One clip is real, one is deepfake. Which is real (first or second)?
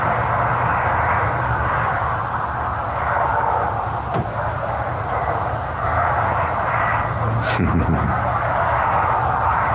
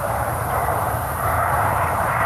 first